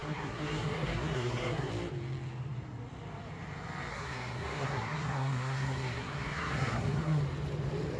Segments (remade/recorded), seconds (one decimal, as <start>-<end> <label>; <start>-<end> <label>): 0.0-1.7 remade; 1.7-3.9 recorded; 3.9-7.2 remade; 7.2-8.0 recorded